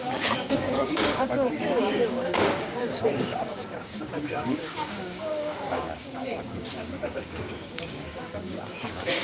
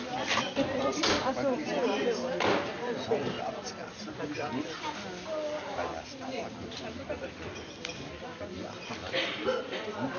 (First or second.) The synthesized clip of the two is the first